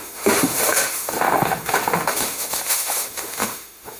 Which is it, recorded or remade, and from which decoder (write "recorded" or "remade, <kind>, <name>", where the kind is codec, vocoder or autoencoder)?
remade, autoencoder, DAC-VAE